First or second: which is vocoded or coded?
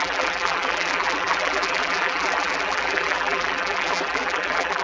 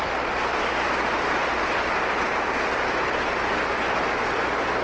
first